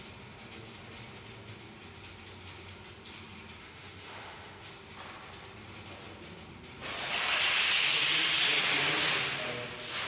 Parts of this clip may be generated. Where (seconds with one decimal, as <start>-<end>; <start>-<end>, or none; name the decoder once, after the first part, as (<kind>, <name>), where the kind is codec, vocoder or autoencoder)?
3.6-4.7 (autoencoder, DAC-VAE)